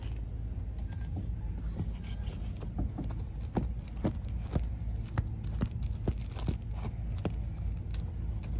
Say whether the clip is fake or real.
real